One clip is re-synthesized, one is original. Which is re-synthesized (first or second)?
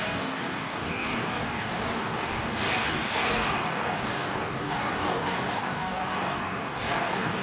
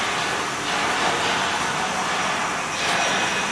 first